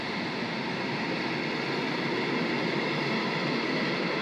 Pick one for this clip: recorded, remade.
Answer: recorded